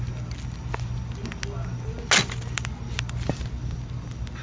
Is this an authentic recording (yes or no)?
yes